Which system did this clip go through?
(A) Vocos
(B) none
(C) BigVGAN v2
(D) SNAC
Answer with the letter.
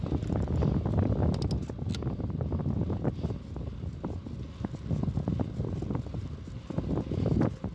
B